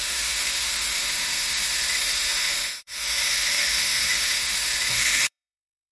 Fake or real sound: fake